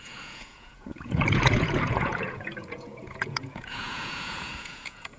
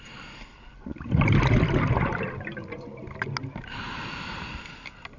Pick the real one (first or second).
second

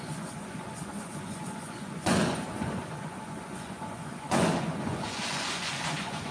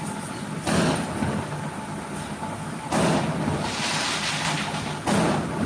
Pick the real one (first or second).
second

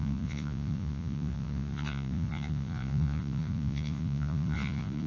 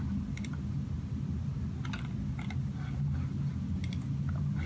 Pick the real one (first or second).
second